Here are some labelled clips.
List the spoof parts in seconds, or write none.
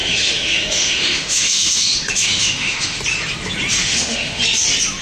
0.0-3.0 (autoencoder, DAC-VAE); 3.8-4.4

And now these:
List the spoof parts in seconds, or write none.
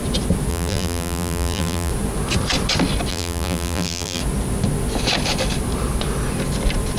0.5-1.9 (vocoder, BigVGAN v2); 3.1-4.2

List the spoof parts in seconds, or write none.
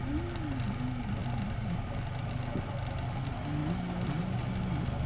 3.6-4.5 (vocoder, BigVGAN v2)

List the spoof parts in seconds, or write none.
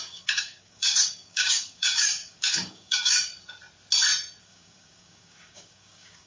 0.0-3.3 (codec, DAC); 4.4-6.3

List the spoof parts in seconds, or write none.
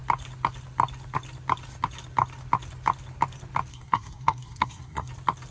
3.7-5.1 (codec, SNAC)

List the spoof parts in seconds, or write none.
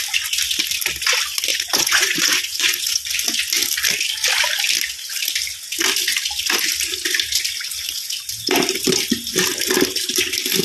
1.5-3.0 (vocoder, Vocos)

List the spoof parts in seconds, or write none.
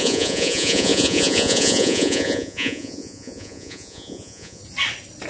0.0-4.6 (vocoder, Vocos)